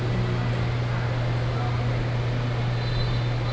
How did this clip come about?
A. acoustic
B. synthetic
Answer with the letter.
A